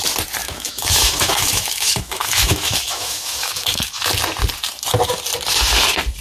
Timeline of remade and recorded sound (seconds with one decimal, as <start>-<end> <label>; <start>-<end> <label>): 0.0-0.4 recorded; 0.4-4.1 remade; 4.1-6.2 recorded

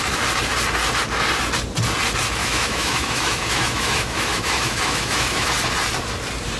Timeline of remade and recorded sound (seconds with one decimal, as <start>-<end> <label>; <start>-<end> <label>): 0.0-2.4 recorded; 2.4-5.5 remade; 5.5-6.6 recorded

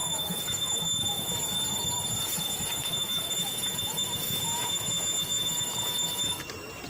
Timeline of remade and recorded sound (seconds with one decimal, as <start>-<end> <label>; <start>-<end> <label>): 0.0-1.3 remade; 1.3-2.3 recorded; 2.3-6.4 remade; 6.4-6.9 recorded

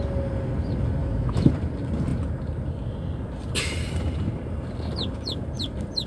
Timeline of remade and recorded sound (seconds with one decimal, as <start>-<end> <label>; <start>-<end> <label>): 0.0-1.0 recorded; 1.0-1.5 remade; 1.5-6.1 recorded

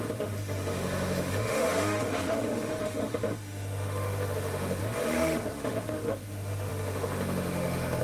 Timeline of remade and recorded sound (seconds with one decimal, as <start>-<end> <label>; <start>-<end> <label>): 0.0-8.0 remade

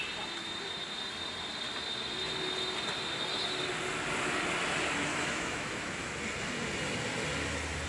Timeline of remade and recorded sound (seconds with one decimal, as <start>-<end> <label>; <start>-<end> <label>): 0.0-5.1 recorded; 5.1-6.1 remade; 6.1-7.9 recorded

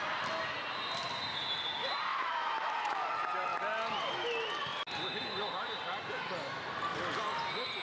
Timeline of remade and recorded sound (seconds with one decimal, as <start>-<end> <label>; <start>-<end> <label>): 0.0-2.1 recorded; 2.1-3.1 remade; 3.1-7.8 recorded